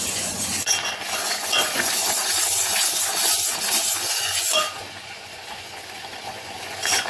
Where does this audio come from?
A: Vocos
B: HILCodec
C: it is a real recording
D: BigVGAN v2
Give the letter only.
A